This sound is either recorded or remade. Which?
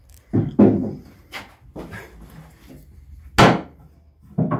recorded